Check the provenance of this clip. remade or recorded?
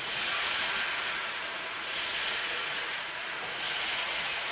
remade